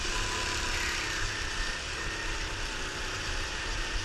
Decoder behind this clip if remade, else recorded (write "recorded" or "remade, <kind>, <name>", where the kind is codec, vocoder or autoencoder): recorded